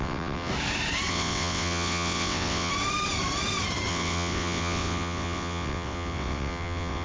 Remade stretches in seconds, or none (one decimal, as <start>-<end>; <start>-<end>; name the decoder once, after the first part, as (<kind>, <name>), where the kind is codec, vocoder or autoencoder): 0.0-0.5 (vocoder, WaveNeXt); 1.1-2.7; 3.9-7.0